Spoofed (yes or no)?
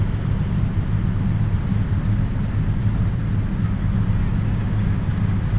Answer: no